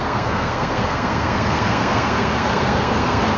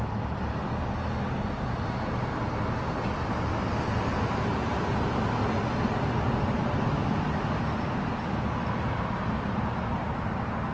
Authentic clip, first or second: second